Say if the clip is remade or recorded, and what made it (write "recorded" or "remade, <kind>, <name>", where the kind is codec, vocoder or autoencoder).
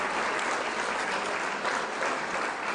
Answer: recorded